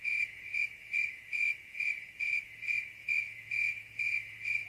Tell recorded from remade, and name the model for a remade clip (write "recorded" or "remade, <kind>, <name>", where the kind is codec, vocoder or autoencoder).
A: remade, vocoder, Vocos